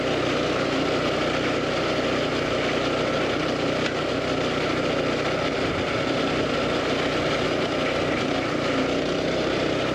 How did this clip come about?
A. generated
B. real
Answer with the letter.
B